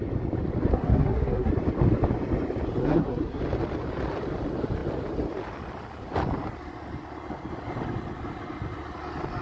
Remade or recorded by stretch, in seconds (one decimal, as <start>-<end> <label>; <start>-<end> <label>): 0.0-0.7 recorded; 0.7-1.5 remade; 1.5-2.8 recorded; 2.8-3.4 remade; 3.4-9.4 recorded